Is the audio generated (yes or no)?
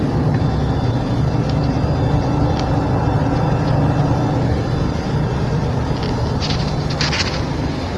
no